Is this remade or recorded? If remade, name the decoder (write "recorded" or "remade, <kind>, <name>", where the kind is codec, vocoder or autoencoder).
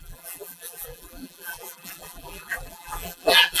remade, vocoder, BigVGAN v2